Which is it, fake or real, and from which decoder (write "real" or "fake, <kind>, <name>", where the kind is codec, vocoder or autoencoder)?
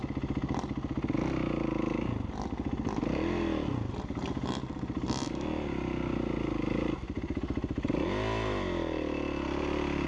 real